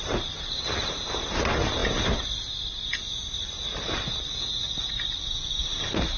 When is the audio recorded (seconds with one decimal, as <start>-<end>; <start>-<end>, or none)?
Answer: 0.0-6.2